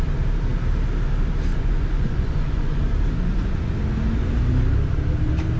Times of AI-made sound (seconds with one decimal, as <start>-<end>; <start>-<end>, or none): 1.5-2.8

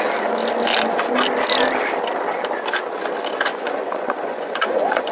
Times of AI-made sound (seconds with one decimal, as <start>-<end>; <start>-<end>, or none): 0.0-0.4; 3.5-5.1

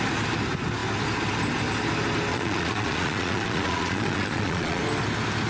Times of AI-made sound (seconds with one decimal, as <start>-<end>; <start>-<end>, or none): 2.3-4.8